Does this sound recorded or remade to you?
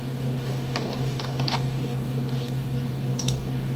remade